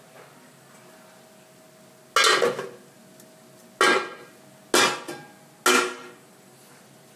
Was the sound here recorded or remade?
recorded